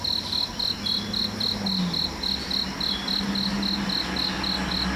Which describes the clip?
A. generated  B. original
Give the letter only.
B